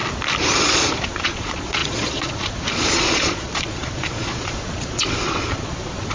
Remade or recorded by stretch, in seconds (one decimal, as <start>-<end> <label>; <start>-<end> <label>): 0.0-0.6 recorded; 0.6-6.1 remade